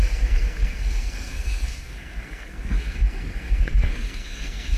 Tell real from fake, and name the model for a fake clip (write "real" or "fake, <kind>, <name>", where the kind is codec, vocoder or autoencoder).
fake, codec, SNAC